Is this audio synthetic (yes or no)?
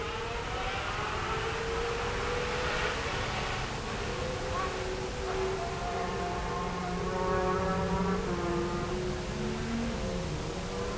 no